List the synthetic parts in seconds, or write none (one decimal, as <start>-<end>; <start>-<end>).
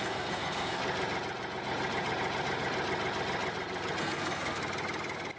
0.0-0.8; 4.0-4.6